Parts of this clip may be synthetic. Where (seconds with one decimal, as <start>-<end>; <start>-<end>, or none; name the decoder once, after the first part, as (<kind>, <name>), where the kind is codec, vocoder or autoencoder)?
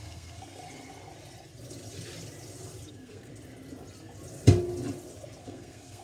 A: 0.0-0.6 (codec, SNAC); 2.9-3.3; 5.4-6.0